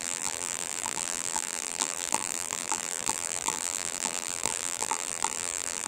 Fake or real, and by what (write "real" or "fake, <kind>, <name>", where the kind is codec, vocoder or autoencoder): fake, vocoder, BigVGAN v2